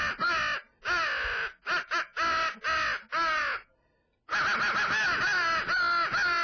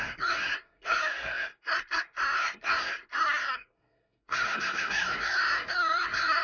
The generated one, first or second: second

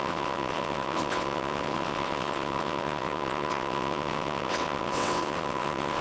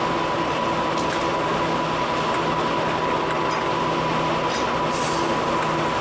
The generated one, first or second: first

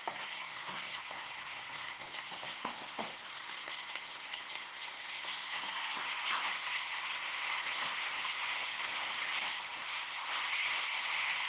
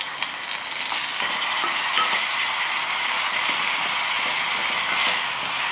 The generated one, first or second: first